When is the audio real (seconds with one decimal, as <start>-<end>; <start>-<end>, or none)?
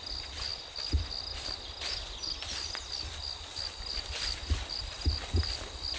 0.0-6.0